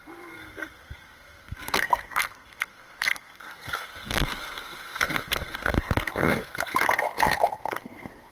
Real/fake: fake